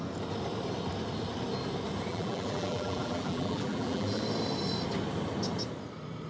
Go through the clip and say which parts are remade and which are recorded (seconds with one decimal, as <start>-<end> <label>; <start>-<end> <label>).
0.0-2.1 recorded; 2.1-4.2 remade; 4.2-6.3 recorded

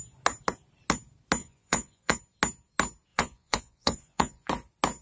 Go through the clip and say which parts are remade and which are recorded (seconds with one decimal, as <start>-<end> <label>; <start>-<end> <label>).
0.0-1.4 recorded; 1.4-2.2 remade; 2.2-3.1 recorded; 3.1-4.5 remade; 4.5-5.0 recorded

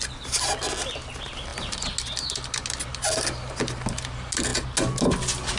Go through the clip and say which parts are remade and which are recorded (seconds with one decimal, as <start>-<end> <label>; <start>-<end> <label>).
0.0-5.6 recorded